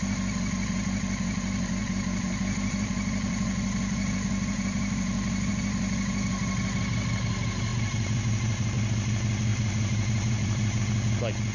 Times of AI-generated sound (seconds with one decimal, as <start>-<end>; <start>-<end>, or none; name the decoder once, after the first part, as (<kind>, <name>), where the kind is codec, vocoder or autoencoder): 1.8-5.5 (vocoder, BigVGAN v2); 7.7-8.9; 9.5-10.8

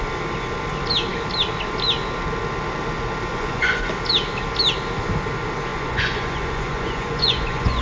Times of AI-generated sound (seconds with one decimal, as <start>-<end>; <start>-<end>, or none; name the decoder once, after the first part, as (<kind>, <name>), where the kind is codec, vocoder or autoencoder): 3.3-3.9 (vocoder, Vocos); 5.7-7.8

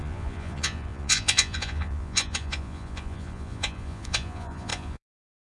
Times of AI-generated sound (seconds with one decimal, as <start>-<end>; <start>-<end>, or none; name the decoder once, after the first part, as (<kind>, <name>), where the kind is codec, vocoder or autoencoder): 0.0-5.5 (vocoder, Vocos)

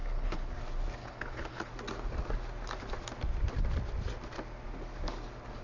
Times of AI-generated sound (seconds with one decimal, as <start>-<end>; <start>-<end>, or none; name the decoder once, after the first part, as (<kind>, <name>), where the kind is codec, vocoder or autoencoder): 0.0-0.5 (codec, HILCodec); 1.0-1.7

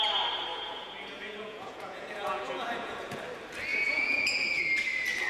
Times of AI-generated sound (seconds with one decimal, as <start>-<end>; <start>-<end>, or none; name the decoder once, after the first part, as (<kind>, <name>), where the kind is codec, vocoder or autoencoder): 0.5-3.2 (vocoder, Vocos); 3.7-4.6

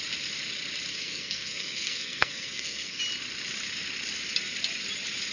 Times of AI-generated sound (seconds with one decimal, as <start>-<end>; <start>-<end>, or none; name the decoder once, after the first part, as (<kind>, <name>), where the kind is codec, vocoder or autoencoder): 0.9-3.0 (codec, SNAC)

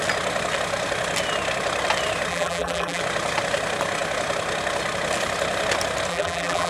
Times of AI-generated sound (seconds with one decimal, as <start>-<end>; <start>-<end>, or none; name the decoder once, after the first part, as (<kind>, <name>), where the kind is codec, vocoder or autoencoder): 2.3-3.0 (vocoder, BigVGAN v2); 6.1-6.7